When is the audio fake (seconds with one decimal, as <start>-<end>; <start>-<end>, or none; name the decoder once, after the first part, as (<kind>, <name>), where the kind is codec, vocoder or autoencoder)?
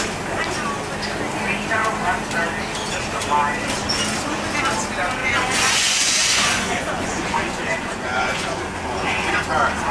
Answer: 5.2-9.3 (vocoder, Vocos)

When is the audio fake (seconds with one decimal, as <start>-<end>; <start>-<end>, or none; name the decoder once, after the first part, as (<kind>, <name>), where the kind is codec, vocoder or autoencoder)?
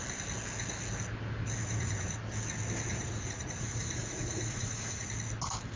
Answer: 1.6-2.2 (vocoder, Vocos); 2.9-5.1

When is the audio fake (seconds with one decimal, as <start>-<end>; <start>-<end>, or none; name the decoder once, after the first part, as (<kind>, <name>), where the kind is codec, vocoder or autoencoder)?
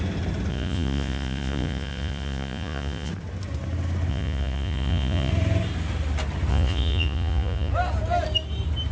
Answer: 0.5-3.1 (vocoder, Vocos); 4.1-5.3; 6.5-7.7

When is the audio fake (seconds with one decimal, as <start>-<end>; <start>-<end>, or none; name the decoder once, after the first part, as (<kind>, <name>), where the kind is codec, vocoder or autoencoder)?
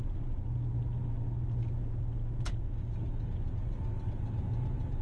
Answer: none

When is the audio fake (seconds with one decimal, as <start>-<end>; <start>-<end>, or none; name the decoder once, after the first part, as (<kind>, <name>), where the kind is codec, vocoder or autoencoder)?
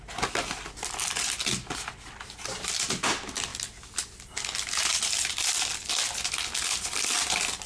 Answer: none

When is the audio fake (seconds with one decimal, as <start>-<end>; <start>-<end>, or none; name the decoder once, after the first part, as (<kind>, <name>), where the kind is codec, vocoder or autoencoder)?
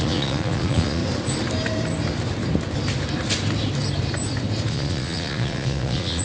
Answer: 0.0-1.0 (vocoder, Vocos); 4.7-6.2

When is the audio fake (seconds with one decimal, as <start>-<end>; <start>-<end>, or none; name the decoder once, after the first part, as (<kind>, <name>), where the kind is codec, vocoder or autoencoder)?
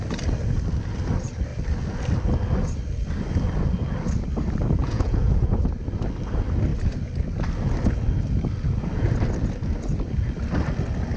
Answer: 4.8-5.6 (vocoder, Vocos)